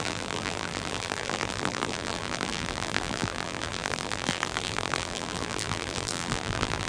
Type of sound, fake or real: fake